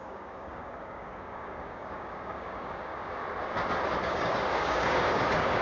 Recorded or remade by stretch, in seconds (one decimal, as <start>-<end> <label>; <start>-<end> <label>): 0.0-3.2 remade; 3.2-4.0 recorded; 4.0-5.6 remade